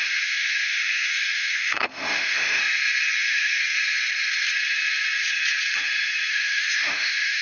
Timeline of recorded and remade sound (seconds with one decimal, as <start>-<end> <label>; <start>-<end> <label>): 0.0-2.6 remade; 2.6-3.2 recorded; 3.2-3.6 remade; 3.6-6.3 recorded; 6.3-7.4 remade

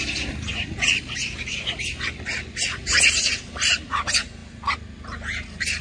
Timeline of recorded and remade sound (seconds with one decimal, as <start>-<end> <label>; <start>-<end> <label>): 0.0-5.8 recorded

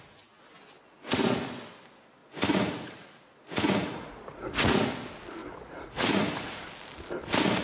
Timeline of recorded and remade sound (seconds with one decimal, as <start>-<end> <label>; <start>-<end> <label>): 0.0-2.2 recorded; 2.2-4.9 remade; 4.9-5.4 recorded; 5.4-6.7 remade; 6.7-7.6 recorded

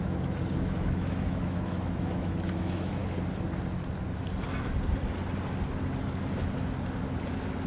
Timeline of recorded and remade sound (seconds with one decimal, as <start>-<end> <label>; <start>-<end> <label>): 0.0-3.0 remade; 3.0-7.7 recorded

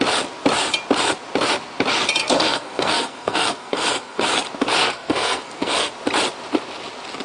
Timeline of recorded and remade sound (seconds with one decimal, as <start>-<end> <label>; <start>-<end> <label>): 0.0-2.2 recorded; 2.2-4.2 remade; 4.2-4.8 recorded; 4.8-5.9 remade; 5.9-7.2 recorded

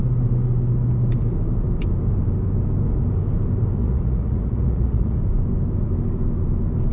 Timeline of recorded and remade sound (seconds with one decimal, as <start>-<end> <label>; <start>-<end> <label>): 0.0-3.8 recorded; 3.8-5.2 remade; 5.2-6.9 recorded